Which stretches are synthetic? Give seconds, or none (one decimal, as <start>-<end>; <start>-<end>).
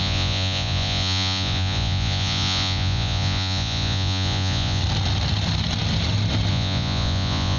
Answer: 0.0-4.8; 6.5-7.6